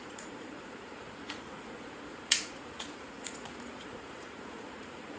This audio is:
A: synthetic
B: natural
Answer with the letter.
A